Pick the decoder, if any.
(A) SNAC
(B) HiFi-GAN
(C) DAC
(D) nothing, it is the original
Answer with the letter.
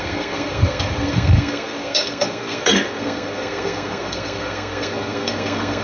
A